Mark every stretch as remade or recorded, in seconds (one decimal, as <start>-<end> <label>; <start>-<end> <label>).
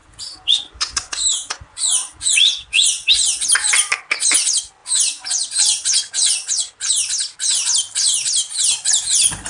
0.0-3.1 remade; 3.1-4.8 recorded; 4.8-6.9 remade; 6.9-9.5 recorded